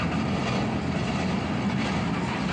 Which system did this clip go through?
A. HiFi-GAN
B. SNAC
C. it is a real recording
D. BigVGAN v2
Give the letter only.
C